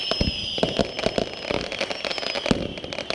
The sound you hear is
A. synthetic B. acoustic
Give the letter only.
B